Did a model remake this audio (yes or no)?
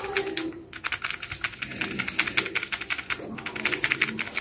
no